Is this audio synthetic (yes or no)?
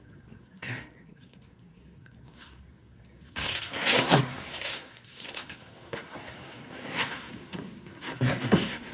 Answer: yes